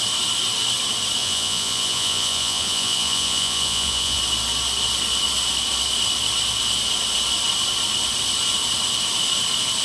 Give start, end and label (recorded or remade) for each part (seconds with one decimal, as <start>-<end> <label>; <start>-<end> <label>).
0.0-1.2 recorded; 1.2-4.2 remade; 4.2-9.8 recorded